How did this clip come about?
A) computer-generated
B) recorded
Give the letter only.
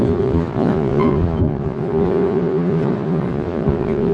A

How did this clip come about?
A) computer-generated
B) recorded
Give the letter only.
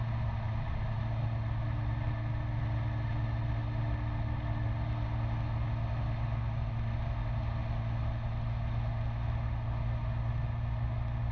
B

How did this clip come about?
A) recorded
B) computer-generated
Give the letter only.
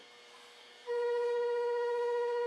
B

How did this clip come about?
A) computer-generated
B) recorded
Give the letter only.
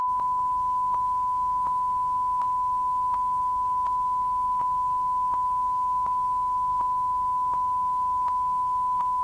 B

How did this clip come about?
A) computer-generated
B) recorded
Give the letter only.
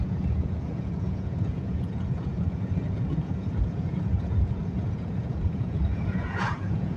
A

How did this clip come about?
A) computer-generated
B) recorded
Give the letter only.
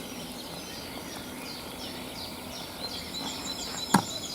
B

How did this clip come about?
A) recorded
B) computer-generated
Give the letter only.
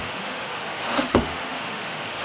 B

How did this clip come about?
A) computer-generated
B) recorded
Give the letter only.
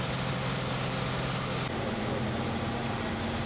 B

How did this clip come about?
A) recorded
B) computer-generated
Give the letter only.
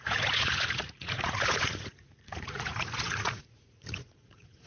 B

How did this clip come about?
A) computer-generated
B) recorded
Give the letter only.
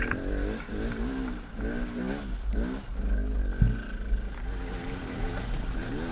B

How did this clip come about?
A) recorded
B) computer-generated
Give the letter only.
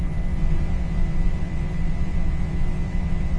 B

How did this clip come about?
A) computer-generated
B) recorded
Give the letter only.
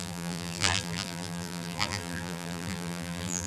A